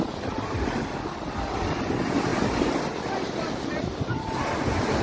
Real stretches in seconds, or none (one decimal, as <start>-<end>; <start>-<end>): 0.0-5.0

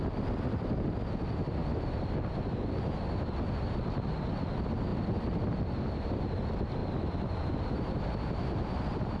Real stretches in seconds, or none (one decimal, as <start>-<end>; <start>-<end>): 0.0-6.8; 7.5-9.2